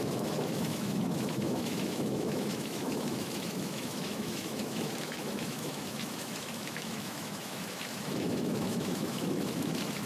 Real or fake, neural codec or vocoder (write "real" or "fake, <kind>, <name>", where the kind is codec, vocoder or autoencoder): fake, autoencoder, DAC-VAE